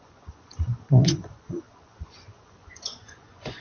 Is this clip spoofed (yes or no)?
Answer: yes